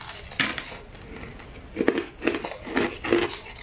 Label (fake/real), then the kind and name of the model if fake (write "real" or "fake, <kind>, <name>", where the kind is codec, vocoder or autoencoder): real